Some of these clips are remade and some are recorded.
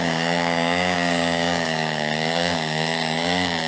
remade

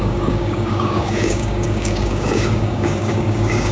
remade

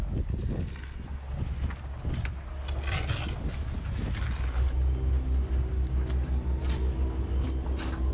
recorded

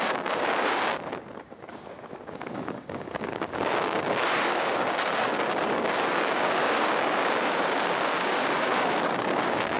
remade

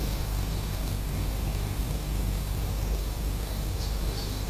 remade